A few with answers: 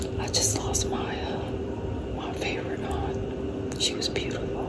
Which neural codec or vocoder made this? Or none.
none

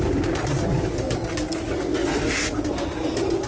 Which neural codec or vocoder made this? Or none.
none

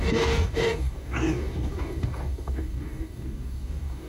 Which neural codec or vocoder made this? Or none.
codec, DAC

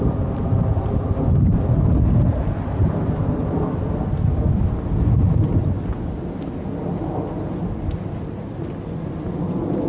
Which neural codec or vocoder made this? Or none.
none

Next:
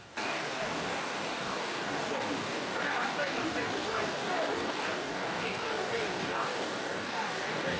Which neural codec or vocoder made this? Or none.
codec, DAC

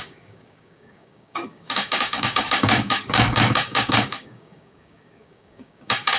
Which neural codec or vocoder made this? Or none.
codec, DAC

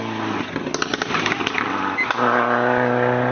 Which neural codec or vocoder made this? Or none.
none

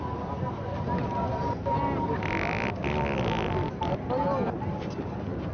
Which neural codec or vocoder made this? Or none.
none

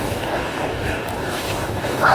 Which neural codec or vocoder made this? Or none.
codec, DAC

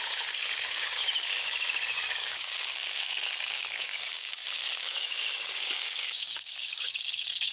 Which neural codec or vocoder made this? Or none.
codec, DAC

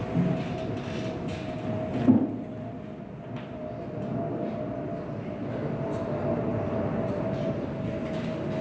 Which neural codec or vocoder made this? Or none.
none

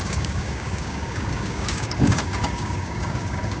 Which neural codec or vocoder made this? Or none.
codec, DAC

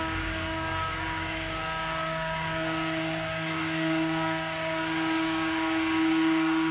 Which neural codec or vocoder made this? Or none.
codec, DAC